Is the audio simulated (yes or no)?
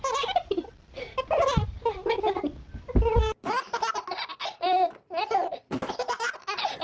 no